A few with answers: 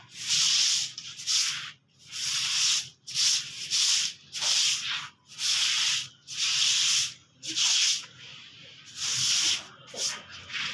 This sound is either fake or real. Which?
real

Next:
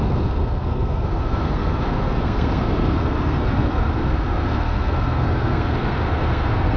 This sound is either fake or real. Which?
fake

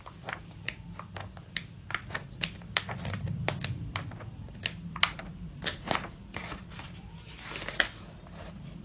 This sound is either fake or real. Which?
real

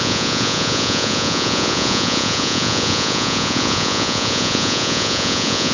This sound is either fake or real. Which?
fake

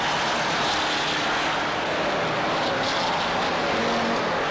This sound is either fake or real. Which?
real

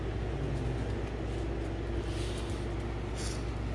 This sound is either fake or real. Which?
real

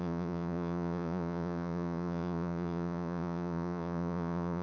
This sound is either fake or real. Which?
fake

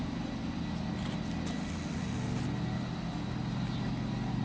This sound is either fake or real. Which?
real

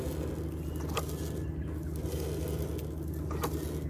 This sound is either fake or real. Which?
real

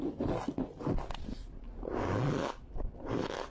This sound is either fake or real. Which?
real